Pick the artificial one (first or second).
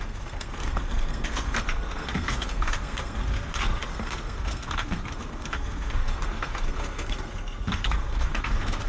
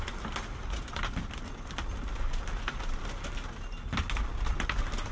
first